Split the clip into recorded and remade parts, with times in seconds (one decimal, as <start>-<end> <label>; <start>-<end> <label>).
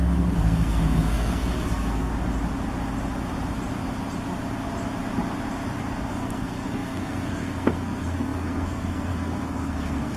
0.0-2.1 remade; 2.1-5.8 recorded; 5.8-10.2 remade